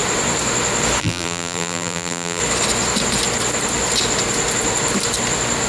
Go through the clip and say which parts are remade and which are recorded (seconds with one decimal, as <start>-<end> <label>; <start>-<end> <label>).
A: 0.0-1.0 recorded; 1.0-2.4 remade; 2.4-5.7 recorded

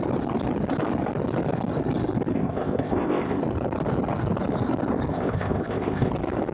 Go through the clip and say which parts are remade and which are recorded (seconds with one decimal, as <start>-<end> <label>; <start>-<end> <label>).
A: 0.0-2.3 recorded; 2.3-3.4 remade; 3.4-5.1 recorded; 5.1-6.1 remade; 6.1-6.5 recorded

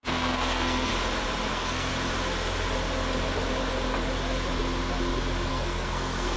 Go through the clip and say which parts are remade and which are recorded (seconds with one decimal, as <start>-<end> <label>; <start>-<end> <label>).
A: 0.0-0.9 remade; 0.9-1.5 recorded; 1.5-1.9 remade; 1.9-5.5 recorded; 5.5-6.4 remade

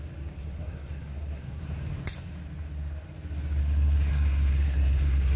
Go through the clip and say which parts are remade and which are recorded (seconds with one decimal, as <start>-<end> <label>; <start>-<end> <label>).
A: 0.0-0.4 recorded; 0.4-1.6 remade; 1.6-3.6 recorded; 3.6-5.4 remade

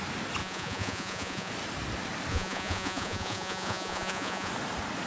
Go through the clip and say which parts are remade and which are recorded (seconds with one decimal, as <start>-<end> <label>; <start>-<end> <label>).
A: 0.0-0.4 recorded; 0.4-1.5 remade; 1.5-2.3 recorded; 2.3-4.5 remade; 4.5-5.1 recorded